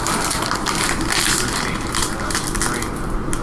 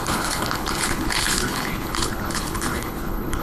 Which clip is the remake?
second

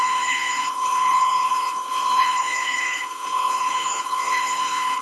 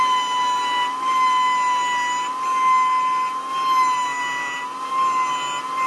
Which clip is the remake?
first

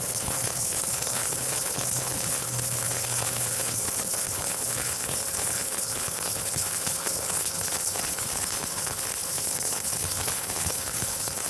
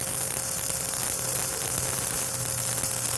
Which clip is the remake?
first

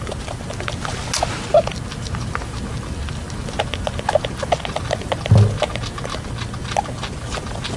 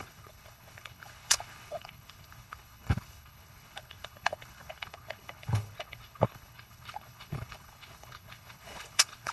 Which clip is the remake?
second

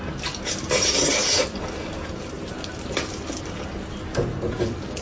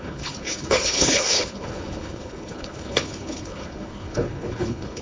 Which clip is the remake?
second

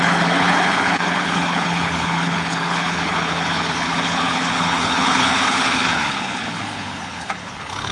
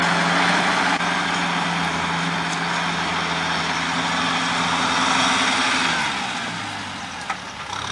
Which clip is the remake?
first